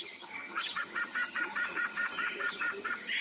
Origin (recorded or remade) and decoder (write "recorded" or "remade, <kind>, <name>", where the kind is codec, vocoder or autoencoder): remade, vocoder, HiFi-GAN